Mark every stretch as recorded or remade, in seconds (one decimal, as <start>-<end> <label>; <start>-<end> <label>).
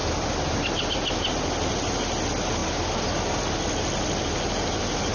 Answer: 0.0-5.1 recorded